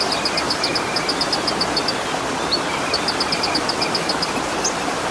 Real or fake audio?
real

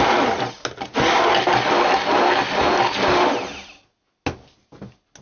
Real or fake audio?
real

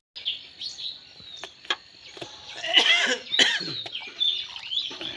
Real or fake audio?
real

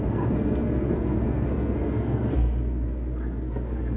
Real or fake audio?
fake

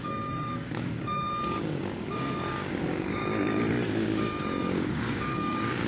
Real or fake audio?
fake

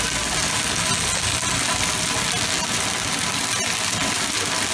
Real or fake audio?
real